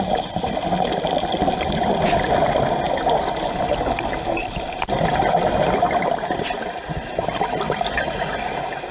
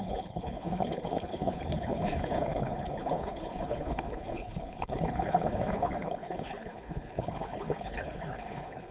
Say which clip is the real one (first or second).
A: first